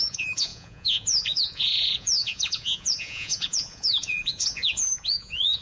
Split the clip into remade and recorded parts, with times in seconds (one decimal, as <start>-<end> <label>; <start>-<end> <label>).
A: 0.0-5.6 remade